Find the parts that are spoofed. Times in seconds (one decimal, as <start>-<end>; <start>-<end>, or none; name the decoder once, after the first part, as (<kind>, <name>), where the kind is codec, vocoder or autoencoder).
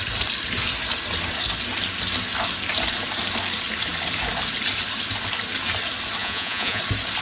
6.2-6.8 (vocoder, Vocos)